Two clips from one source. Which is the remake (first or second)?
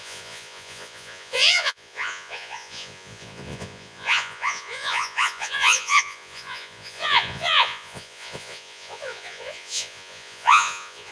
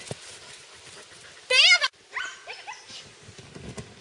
first